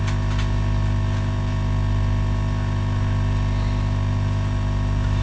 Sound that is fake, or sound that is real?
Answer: real